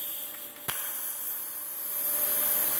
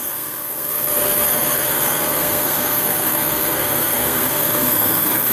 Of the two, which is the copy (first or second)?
second